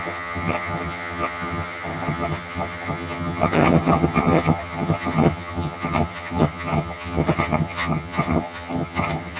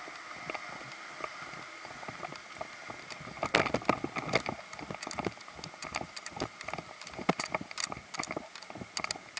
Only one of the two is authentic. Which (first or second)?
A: second